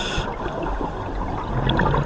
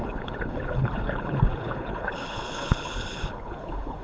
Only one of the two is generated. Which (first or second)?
second